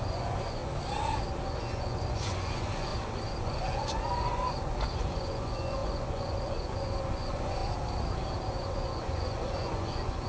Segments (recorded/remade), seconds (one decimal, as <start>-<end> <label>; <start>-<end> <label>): 0.0-0.6 remade; 0.6-1.4 recorded; 1.4-2.9 remade; 2.9-3.4 recorded; 3.4-7.6 remade; 7.6-8.5 recorded; 8.5-10.3 remade

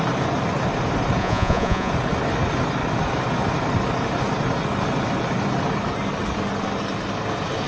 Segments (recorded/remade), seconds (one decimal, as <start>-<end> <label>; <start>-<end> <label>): 0.0-1.2 recorded; 1.2-1.9 remade; 1.9-7.7 recorded

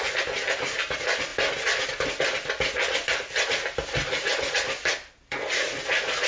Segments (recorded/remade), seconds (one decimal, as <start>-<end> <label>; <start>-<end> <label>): 0.0-6.3 recorded

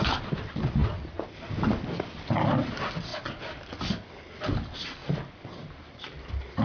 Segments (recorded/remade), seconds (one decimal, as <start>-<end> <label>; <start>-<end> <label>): 0.0-6.6 recorded